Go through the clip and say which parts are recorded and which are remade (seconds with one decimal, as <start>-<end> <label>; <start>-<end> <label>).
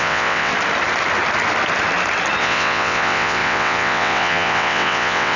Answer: 0.0-0.5 remade; 0.5-2.4 recorded; 2.4-5.4 remade